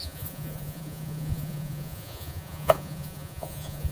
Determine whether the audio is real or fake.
fake